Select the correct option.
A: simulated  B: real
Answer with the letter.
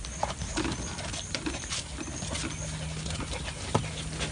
B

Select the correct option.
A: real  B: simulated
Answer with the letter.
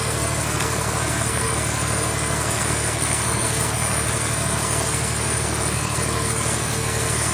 B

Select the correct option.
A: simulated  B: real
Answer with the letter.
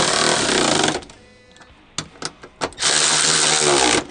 B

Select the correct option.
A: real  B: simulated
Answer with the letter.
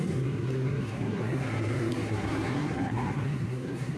B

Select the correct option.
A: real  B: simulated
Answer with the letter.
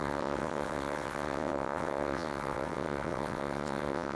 B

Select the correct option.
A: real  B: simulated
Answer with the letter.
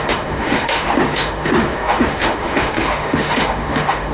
B